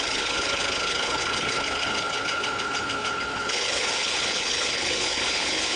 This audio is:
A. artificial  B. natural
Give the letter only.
A